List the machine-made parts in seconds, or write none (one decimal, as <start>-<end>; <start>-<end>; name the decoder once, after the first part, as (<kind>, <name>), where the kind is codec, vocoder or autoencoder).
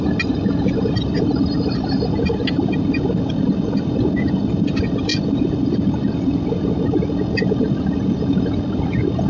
none